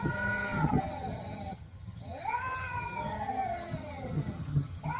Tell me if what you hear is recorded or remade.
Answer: remade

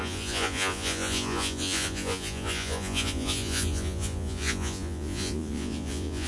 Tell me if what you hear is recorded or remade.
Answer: remade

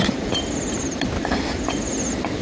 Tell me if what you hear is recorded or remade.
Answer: remade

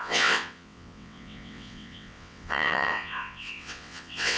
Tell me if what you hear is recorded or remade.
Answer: remade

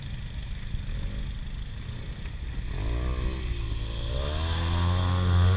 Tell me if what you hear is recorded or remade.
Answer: recorded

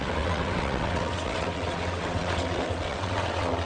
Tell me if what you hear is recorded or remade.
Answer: remade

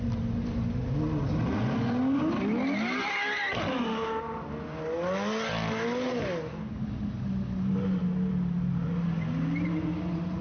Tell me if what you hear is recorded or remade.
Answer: recorded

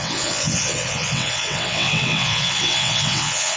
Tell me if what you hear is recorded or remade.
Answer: remade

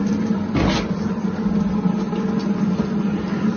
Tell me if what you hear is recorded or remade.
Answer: recorded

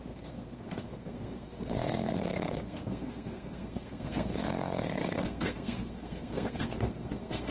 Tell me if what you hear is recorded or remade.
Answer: remade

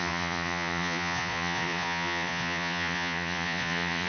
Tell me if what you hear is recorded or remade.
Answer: remade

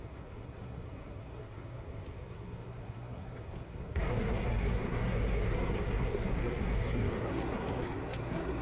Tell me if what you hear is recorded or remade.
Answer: remade